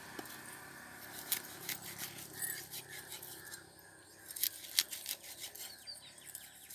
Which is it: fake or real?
real